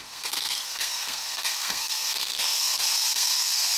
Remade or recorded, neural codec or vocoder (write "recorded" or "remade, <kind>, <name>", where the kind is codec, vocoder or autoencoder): remade, codec, SNAC